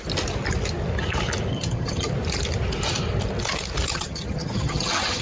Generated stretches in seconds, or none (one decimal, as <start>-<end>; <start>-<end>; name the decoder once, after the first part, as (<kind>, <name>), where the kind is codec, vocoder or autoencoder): 1.5-2.1 (vocoder, HiFi-GAN); 3.9-5.2